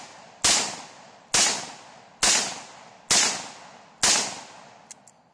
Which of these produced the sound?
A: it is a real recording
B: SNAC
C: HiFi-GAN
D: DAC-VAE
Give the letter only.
A